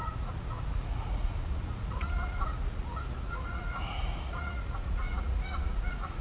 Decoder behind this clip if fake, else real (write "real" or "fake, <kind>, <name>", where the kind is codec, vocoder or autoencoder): fake, vocoder, Vocos